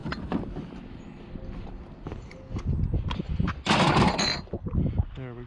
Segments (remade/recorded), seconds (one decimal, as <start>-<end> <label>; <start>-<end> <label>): 0.0-5.5 recorded